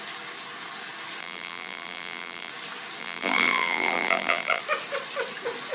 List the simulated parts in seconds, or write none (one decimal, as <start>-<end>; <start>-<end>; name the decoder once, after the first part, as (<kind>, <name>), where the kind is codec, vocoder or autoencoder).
1.2-2.5 (vocoder, BigVGAN v2); 3.0-4.6